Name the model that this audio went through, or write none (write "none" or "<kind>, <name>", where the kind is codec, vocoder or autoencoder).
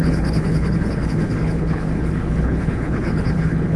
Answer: codec, HILCodec